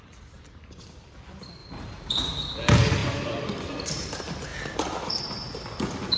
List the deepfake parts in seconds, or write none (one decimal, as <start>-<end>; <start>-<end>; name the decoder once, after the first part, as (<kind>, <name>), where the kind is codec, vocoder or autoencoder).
1.6-2.2 (vocoder, BigVGAN v2)